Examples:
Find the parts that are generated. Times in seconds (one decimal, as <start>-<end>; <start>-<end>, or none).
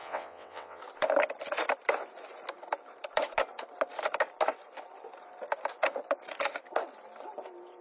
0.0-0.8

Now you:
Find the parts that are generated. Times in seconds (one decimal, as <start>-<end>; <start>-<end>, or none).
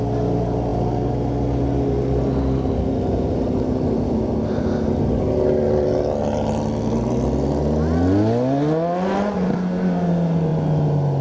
none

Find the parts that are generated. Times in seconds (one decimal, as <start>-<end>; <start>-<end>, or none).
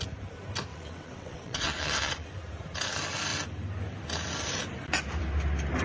0.7-2.3